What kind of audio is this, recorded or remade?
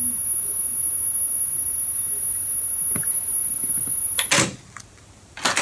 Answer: recorded